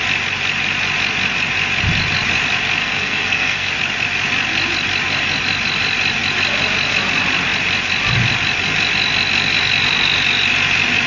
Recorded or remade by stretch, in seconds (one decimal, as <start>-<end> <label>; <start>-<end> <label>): 0.0-2.8 recorded; 2.8-3.7 remade; 3.7-11.1 recorded